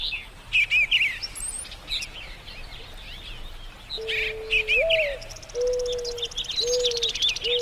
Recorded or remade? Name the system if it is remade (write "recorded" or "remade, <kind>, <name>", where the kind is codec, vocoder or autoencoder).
recorded